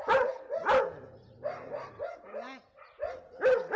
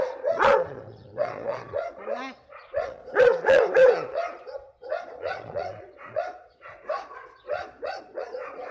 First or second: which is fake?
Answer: second